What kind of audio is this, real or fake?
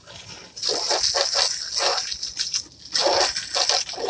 real